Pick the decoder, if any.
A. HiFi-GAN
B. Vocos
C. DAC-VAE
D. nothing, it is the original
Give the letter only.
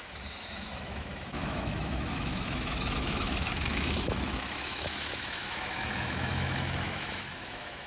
C